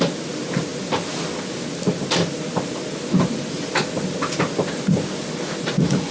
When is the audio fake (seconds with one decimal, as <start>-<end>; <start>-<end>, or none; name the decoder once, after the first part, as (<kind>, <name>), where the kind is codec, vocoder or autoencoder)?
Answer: none